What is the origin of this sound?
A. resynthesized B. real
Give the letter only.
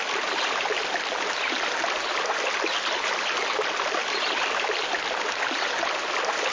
B